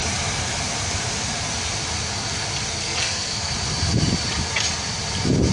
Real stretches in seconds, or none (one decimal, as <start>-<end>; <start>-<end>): 0.0-2.8; 3.5-5.5